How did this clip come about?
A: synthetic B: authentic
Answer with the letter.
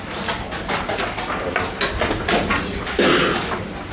B